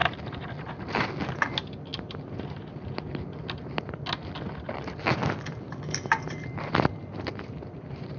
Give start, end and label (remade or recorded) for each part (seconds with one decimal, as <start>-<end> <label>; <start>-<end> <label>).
0.0-0.7 remade; 0.7-5.2 recorded; 5.2-8.2 remade